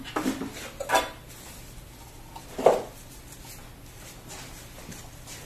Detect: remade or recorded recorded